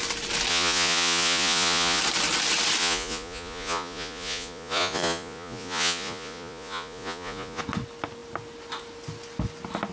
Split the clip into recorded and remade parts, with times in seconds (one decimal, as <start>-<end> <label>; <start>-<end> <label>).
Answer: 0.0-0.5 recorded; 0.5-2.0 remade; 2.0-2.8 recorded; 2.8-7.6 remade; 7.6-9.9 recorded